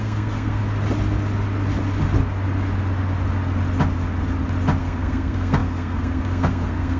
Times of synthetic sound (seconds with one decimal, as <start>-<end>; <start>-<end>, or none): 0.0-0.6; 4.8-7.0